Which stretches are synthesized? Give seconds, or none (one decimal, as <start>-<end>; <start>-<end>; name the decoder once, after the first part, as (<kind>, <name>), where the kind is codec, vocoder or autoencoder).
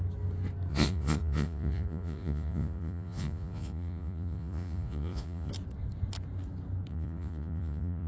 0.7-5.5 (vocoder, Vocos); 6.9-8.1